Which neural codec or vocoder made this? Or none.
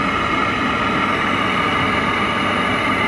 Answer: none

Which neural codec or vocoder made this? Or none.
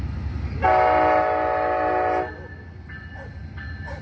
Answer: none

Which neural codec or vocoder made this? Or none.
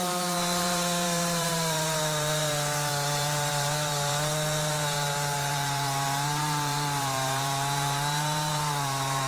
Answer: vocoder, BigVGAN v2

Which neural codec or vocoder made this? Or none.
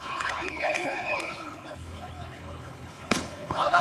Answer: codec, HILCodec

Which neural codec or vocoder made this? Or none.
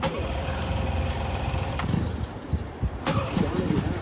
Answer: vocoder, BigVGAN v2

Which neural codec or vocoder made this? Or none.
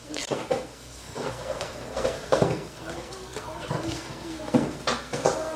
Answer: codec, SNAC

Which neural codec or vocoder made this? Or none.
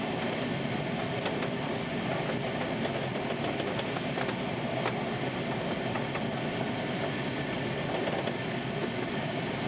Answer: none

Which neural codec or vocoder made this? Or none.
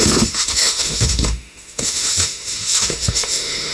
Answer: autoencoder, DAC-VAE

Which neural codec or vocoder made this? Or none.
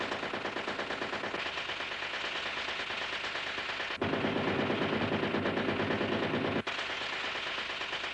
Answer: none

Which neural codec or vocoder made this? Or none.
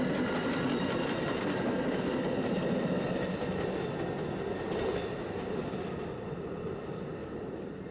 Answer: none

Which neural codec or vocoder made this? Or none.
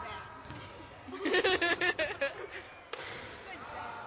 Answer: none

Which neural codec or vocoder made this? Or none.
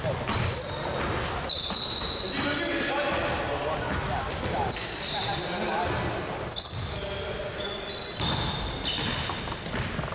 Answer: none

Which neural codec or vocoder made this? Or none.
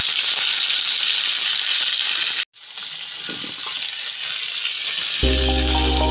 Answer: none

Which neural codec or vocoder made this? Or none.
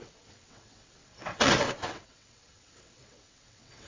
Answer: vocoder, WaveNeXt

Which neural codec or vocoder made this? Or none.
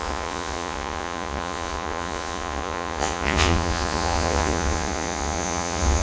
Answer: vocoder, Vocos